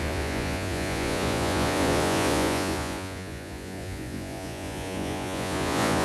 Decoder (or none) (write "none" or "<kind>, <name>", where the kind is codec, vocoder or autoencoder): vocoder, Vocos